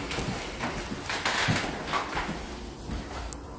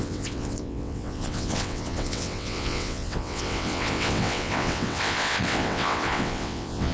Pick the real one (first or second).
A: first